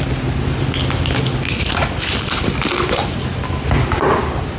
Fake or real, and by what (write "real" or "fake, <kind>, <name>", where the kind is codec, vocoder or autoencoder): real